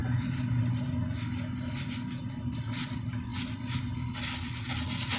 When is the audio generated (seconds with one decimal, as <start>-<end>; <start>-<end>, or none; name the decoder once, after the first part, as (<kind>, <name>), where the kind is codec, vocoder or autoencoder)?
none